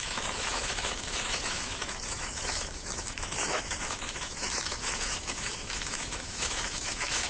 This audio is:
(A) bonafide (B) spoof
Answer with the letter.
B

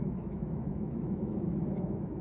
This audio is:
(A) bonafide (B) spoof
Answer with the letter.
B